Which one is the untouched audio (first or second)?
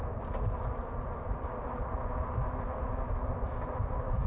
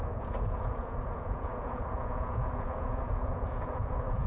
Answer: first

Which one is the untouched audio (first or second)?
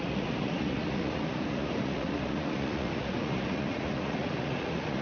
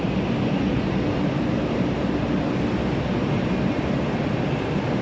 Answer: second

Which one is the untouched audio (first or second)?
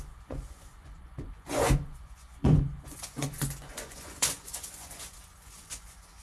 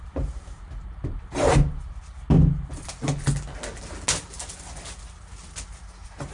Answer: second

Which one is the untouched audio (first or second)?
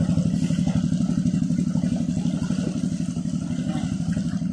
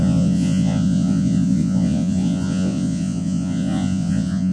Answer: first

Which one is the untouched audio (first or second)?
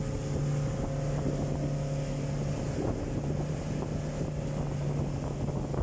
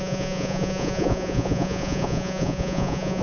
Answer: first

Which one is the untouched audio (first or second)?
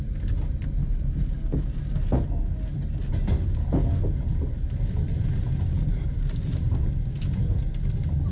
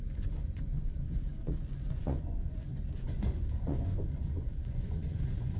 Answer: first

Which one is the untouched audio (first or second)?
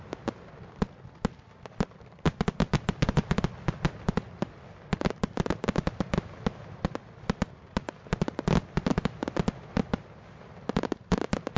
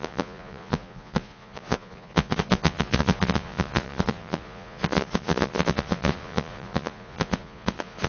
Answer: first